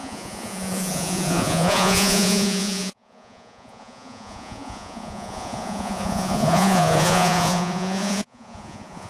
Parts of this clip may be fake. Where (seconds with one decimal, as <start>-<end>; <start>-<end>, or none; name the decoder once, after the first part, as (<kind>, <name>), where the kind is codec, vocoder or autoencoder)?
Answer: 0.0-9.1 (vocoder, Vocos)